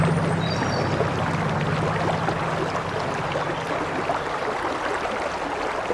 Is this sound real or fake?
real